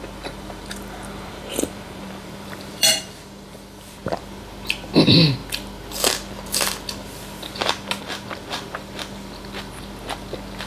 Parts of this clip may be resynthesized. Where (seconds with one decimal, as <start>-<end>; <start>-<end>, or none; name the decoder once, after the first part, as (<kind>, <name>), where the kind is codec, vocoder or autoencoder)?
0.0-4.4 (vocoder, BigVGAN v2)